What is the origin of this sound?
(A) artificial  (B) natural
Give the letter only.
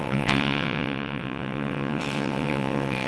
A